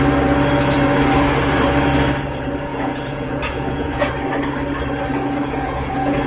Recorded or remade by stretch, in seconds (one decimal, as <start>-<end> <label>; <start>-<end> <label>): 0.0-2.7 recorded; 2.7-4.1 remade; 4.1-5.4 recorded; 5.4-6.3 remade

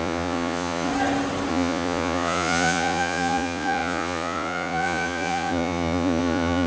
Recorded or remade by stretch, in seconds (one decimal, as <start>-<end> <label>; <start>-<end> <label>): 0.0-0.9 remade; 0.9-1.5 recorded; 1.5-6.7 remade

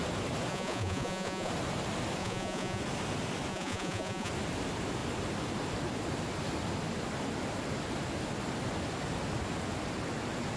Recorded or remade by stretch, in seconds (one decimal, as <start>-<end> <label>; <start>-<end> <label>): 0.0-0.5 recorded; 0.5-1.5 remade; 1.5-2.2 recorded; 2.2-2.8 remade; 2.8-3.5 recorded; 3.5-4.3 remade; 4.3-10.6 recorded

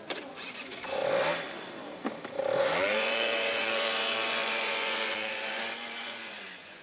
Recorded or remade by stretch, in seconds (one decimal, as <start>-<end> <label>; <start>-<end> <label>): 0.0-1.0 remade; 1.0-2.6 recorded; 2.6-6.8 remade

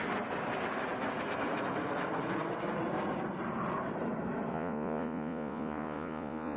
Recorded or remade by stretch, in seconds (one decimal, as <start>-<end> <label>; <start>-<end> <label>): 0.0-4.5 recorded; 4.5-6.6 remade